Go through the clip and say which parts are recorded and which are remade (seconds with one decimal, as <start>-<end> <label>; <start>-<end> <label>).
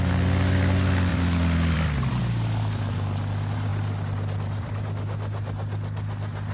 0.0-1.1 recorded; 1.1-2.2 remade; 2.2-3.7 recorded; 3.7-4.8 remade; 4.8-6.5 recorded